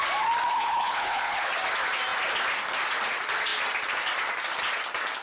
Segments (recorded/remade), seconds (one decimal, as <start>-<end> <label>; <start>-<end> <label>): 0.0-0.5 recorded; 0.5-1.5 remade; 1.5-5.2 recorded